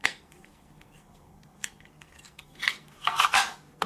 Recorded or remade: remade